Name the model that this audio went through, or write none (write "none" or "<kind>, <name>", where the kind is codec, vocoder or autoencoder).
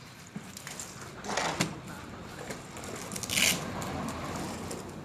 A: none